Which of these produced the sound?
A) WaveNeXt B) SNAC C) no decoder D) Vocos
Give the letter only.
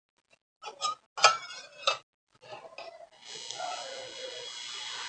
C